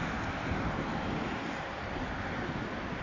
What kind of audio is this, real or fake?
real